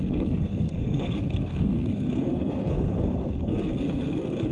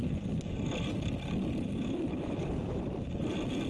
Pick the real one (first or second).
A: second